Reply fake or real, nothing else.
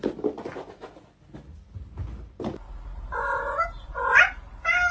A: real